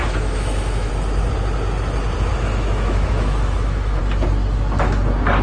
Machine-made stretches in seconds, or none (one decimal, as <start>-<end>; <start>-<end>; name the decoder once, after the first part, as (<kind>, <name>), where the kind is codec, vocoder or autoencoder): 0.0-0.9 (autoencoder, DAC-VAE); 2.3-4.0